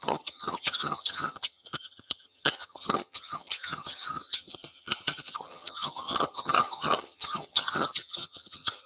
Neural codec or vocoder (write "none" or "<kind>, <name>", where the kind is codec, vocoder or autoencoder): vocoder, HiFi-GAN